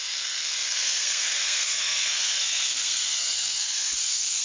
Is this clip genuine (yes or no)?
no